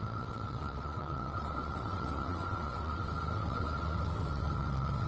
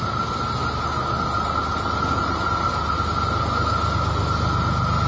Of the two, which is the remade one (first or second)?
first